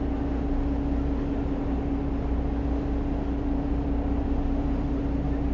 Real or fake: real